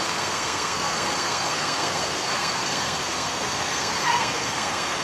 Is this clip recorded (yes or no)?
no